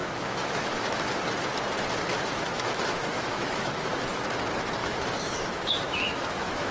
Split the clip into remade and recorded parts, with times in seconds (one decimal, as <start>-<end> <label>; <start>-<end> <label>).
0.0-1.0 remade; 1.0-2.1 recorded; 2.1-3.9 remade; 3.9-4.8 recorded; 4.8-6.7 remade